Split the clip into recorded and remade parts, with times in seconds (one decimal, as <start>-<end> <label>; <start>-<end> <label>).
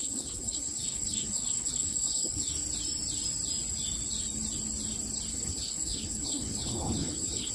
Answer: 0.0-2.5 remade; 2.5-5.3 recorded; 5.3-7.5 remade